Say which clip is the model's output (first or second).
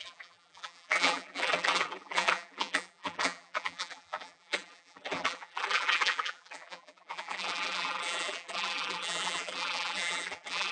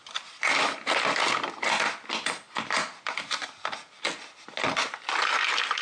first